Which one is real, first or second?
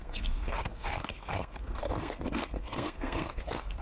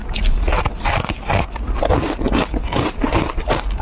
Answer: second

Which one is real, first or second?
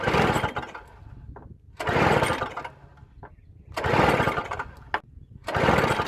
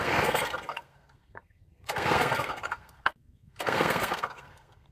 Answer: first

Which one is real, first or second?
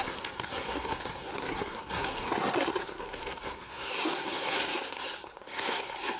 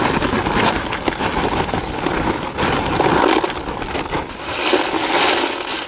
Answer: second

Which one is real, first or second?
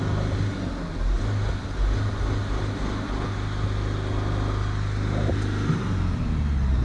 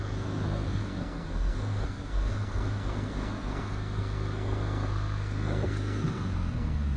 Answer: first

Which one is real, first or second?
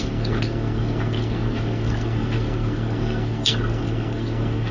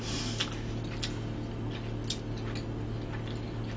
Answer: second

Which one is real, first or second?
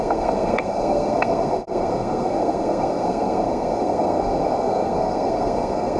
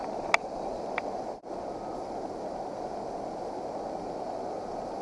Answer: second